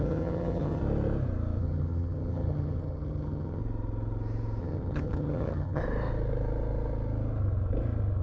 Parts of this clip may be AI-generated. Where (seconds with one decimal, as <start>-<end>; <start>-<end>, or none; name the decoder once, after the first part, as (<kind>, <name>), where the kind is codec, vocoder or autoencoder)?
0.0-0.8 (vocoder, HiFi-GAN); 1.6-3.6; 4.6-5.8